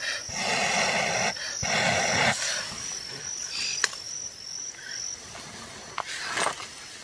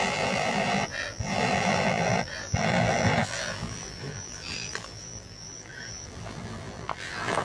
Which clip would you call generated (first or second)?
second